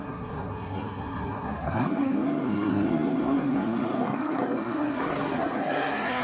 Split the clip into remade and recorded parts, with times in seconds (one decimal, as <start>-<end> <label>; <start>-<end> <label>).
0.0-6.2 remade